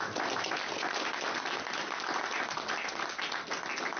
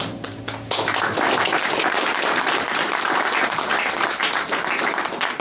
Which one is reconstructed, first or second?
second